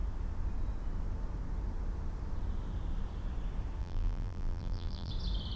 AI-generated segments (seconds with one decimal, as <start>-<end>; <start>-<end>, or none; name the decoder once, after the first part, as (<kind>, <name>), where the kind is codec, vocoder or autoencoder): 3.8-5.1 (vocoder, BigVGAN v2)